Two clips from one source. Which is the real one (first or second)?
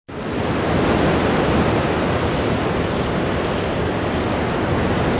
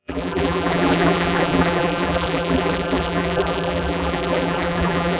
first